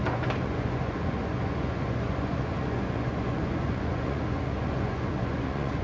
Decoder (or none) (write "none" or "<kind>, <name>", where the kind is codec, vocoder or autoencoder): vocoder, Vocos